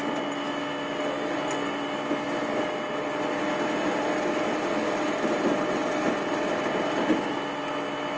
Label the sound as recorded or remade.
recorded